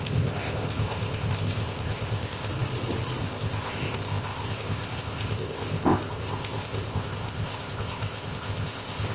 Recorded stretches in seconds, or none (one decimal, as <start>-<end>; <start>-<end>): 2.5-3.2